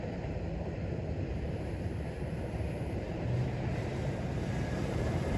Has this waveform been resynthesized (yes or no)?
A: yes